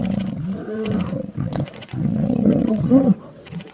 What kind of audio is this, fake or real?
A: fake